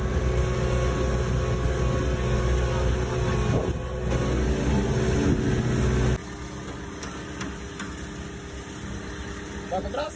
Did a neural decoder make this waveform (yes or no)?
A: no